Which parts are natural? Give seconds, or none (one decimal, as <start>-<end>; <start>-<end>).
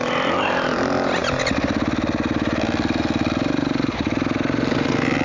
0.0-5.2